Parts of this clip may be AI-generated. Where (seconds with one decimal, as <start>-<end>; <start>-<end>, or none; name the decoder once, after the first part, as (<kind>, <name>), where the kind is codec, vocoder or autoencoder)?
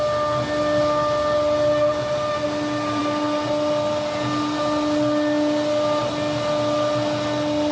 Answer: none